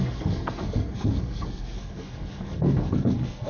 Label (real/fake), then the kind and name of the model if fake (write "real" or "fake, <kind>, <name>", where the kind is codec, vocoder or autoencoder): fake, codec, SNAC